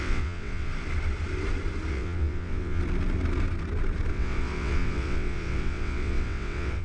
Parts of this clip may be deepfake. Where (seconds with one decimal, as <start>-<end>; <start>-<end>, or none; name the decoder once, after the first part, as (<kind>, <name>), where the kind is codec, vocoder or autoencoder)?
0.0-0.7 (vocoder, WaveNeXt); 1.9-2.8; 4.1-6.8